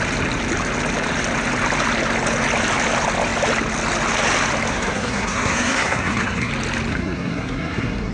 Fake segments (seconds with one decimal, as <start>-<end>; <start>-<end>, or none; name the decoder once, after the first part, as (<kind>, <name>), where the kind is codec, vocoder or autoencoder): 4.7-6.5 (codec, SNAC); 6.9-8.1